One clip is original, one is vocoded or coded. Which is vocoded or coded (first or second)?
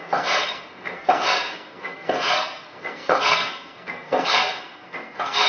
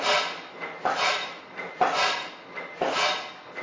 first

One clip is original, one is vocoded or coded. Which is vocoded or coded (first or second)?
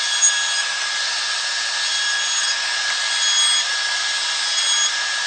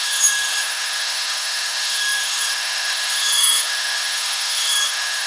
second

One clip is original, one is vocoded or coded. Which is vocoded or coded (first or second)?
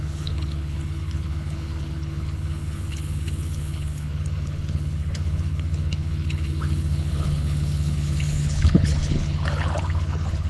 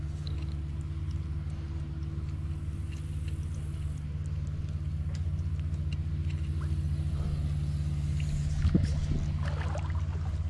first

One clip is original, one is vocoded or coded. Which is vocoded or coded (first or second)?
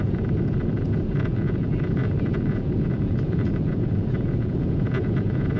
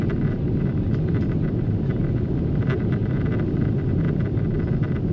first